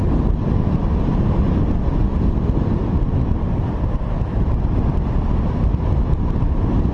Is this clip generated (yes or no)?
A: no